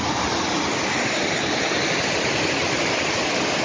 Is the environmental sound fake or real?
real